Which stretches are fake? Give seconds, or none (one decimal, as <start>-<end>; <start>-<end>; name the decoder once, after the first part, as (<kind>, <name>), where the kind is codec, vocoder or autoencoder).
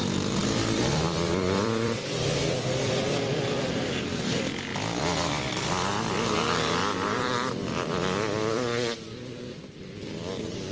0.0-4.7 (vocoder, BigVGAN v2); 7.2-10.7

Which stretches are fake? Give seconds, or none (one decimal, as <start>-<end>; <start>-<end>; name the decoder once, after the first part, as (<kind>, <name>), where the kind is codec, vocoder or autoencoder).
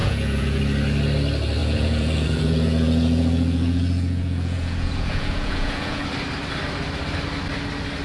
0.0-0.6 (vocoder, Vocos); 1.6-6.0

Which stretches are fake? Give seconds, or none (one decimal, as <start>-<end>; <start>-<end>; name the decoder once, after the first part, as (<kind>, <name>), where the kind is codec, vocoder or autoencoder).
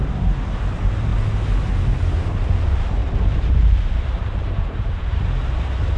3.0-5.2 (vocoder, BigVGAN v2)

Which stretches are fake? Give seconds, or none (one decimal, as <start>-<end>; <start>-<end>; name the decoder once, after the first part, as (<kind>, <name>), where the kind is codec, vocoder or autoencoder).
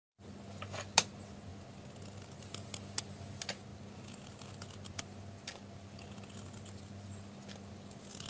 none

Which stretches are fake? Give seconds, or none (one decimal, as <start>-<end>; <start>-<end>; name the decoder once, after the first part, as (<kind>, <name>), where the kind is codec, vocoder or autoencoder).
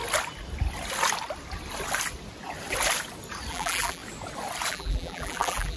3.5-4.0 (vocoder, BigVGAN v2); 4.7-5.8